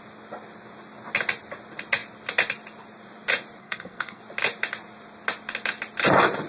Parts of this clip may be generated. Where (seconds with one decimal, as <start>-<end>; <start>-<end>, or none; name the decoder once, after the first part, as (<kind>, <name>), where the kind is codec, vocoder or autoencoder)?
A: 3.6-4.2 (codec, SNAC)